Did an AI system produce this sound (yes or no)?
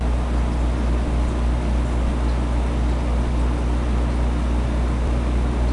no